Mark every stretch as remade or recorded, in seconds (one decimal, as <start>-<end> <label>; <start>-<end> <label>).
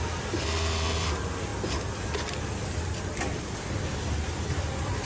0.0-5.1 recorded